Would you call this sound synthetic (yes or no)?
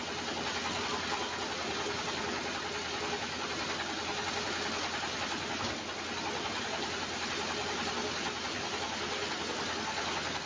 no